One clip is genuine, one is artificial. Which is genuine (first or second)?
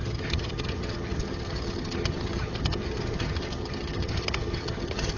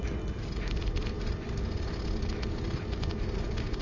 second